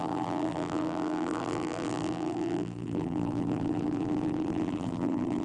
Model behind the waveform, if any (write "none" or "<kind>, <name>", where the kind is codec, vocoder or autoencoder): vocoder, BigVGAN v2